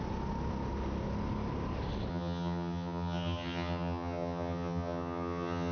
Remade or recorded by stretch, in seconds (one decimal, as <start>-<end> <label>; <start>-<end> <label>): 0.0-2.1 recorded; 2.1-5.7 remade